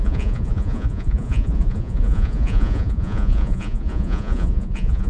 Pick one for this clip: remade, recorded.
remade